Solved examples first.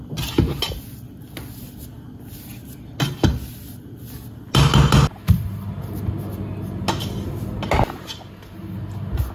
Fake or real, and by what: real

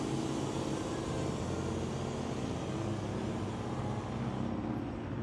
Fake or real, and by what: real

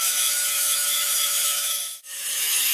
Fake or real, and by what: fake, autoencoder, DAC-VAE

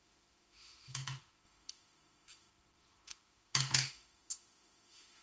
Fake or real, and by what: fake, autoencoder, DAC-VAE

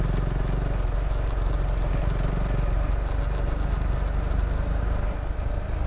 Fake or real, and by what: real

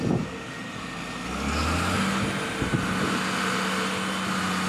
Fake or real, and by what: real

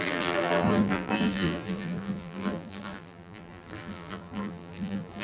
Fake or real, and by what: fake, vocoder, BigVGAN v2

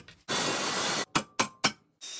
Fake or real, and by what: real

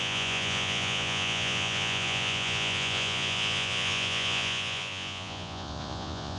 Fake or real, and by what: fake, vocoder, Vocos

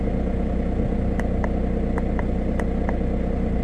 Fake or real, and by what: real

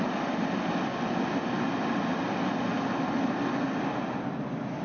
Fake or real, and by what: real